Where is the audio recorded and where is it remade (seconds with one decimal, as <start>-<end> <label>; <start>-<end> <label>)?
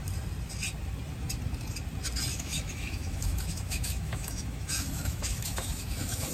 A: 0.0-2.3 recorded; 2.3-6.3 remade